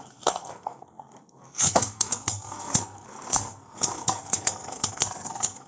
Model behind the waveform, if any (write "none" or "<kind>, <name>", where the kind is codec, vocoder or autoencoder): codec, SNAC